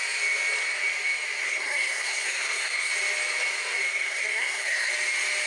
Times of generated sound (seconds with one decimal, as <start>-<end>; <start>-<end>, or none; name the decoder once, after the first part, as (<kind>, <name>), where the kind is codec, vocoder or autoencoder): 1.4-2.9 (codec, SNAC); 3.9-4.9